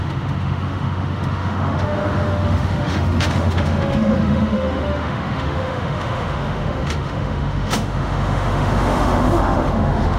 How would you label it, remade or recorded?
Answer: remade